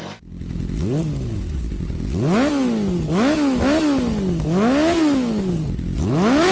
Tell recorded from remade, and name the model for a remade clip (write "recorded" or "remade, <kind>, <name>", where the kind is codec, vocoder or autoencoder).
recorded